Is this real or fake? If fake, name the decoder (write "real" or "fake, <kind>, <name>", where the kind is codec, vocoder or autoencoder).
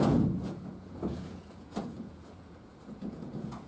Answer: fake, vocoder, Vocos